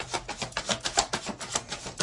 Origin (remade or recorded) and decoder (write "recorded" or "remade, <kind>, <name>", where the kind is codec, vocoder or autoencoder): recorded